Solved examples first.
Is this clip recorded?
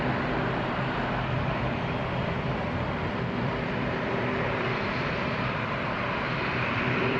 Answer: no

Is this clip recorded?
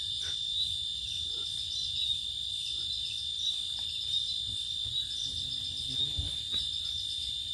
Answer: yes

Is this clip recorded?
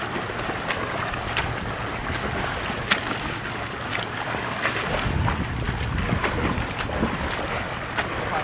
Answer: yes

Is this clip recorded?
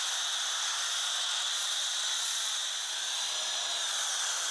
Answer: yes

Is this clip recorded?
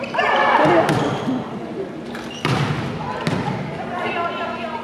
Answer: yes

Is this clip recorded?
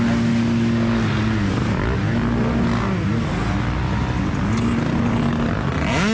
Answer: yes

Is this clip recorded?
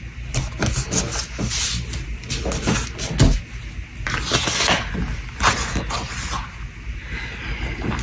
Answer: yes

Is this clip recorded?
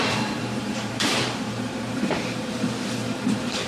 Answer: no